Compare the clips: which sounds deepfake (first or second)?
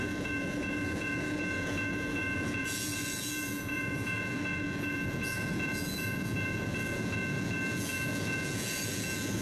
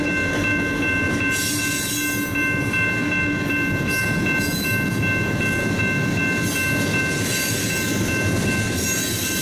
first